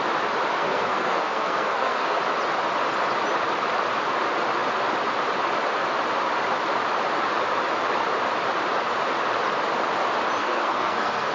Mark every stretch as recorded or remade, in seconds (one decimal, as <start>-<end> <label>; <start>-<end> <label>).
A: 0.0-0.5 recorded; 0.5-2.2 remade; 2.2-10.4 recorded; 10.4-11.3 remade